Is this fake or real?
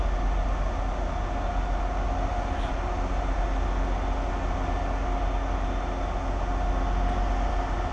real